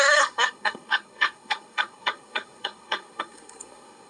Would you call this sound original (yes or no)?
no